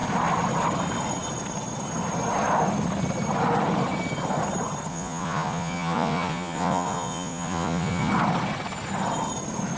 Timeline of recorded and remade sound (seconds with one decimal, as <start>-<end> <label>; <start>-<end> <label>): 0.0-4.9 recorded; 4.9-8.1 remade; 8.1-9.8 recorded